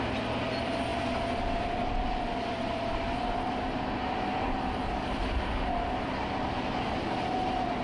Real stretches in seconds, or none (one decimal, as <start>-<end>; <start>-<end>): 0.0-7.8